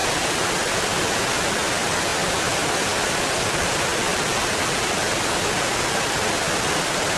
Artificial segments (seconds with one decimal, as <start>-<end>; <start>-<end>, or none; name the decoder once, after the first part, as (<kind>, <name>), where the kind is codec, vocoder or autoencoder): 0.0-1.1 (vocoder, BigVGAN v2); 2.1-5.2